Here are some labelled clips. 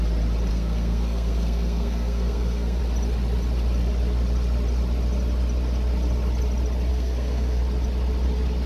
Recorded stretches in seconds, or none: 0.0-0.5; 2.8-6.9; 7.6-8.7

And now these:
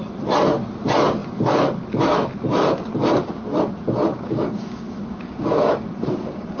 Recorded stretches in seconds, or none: 0.0-4.1